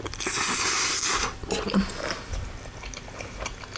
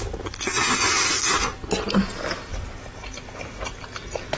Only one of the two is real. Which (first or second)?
second